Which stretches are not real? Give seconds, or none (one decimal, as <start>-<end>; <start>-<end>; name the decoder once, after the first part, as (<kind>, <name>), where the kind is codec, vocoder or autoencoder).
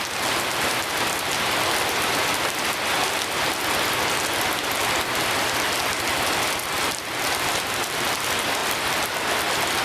none